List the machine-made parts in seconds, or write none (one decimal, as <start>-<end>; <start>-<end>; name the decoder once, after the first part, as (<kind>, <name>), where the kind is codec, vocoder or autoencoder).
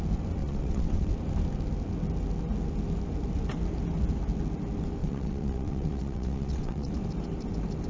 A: 0.4-1.1 (vocoder, WaveNeXt); 5.0-6.9